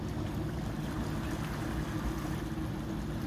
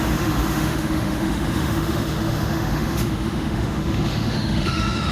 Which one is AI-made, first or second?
second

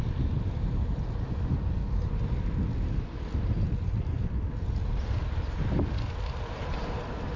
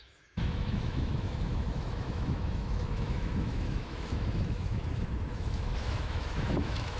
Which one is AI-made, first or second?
second